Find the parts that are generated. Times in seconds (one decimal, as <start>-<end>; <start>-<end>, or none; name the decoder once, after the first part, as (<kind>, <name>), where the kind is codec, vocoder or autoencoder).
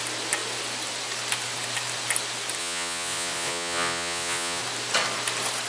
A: 2.6-4.6 (vocoder, Vocos)